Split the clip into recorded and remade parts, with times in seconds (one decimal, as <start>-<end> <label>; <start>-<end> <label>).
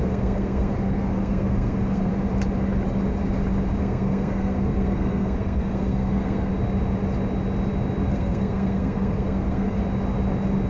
0.0-2.1 remade; 2.1-3.8 recorded; 3.8-6.5 remade; 6.5-8.1 recorded; 8.1-9.8 remade; 9.8-10.7 recorded